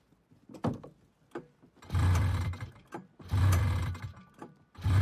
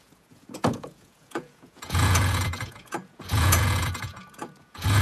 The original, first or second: first